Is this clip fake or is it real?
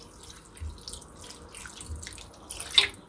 real